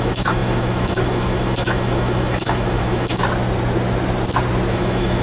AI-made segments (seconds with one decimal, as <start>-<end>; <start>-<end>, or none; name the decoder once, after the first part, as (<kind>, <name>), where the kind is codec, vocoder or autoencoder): 0.0-3.2 (autoencoder, DAC-VAE); 4.7-5.2